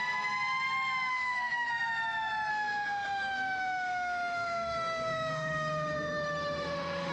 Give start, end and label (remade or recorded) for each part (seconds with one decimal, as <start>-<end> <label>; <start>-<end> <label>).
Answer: 0.0-1.1 recorded; 1.1-1.7 remade; 1.7-2.5 recorded; 2.5-7.1 remade